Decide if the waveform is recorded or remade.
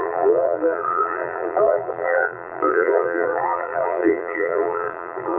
remade